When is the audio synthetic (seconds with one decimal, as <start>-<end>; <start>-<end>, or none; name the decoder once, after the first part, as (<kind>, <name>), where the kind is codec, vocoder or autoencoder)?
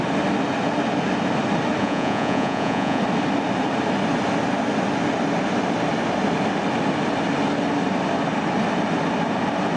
1.8-3.0 (vocoder, Vocos)